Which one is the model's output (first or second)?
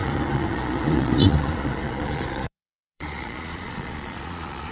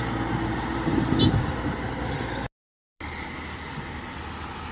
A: first